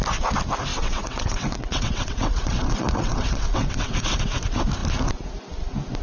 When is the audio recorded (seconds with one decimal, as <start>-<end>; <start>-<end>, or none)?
0.0-0.7; 4.2-6.0